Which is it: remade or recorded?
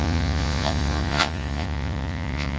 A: remade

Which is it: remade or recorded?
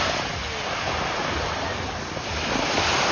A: recorded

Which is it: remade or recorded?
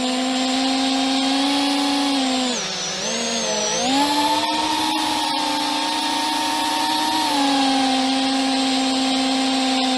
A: recorded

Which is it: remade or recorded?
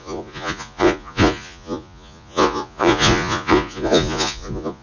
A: remade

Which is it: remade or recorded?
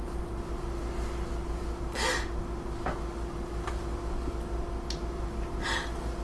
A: recorded